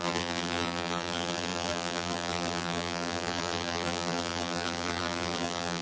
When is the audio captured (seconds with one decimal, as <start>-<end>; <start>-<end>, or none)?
none